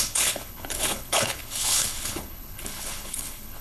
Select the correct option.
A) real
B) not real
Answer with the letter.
B